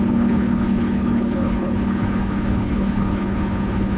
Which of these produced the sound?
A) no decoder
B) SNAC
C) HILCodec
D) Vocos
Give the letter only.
C